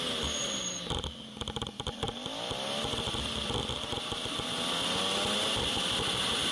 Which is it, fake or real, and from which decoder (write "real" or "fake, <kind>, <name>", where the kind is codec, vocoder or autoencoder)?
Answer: real